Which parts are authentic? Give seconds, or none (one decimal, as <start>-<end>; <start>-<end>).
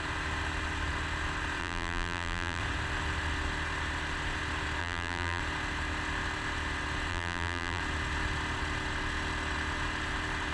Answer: 0.0-1.6; 2.6-4.8; 5.4-7.1; 7.8-10.5